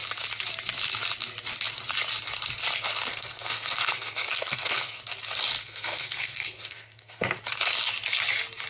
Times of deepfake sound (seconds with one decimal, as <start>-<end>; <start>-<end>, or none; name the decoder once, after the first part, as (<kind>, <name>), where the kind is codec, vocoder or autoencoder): 3.1-5.0 (codec, SNAC); 5.6-7.3